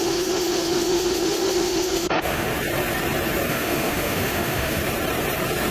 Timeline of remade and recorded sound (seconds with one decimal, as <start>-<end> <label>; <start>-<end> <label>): 0.0-2.5 remade; 2.5-3.5 recorded; 3.5-4.8 remade; 4.8-5.7 recorded

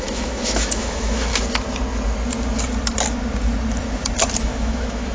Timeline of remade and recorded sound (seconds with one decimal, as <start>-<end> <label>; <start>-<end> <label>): 0.0-1.3 remade; 1.3-4.4 recorded; 4.4-5.1 remade

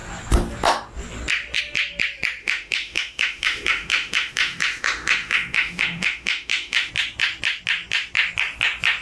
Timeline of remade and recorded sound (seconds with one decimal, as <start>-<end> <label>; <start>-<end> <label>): 0.0-2.4 recorded; 2.4-6.9 remade; 6.9-9.0 recorded

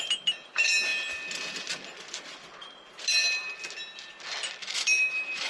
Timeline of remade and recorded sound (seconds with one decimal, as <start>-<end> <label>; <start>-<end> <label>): 0.0-4.6 recorded; 4.6-5.5 remade